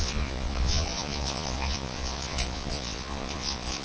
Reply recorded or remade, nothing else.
remade